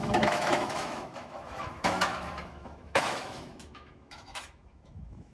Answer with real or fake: fake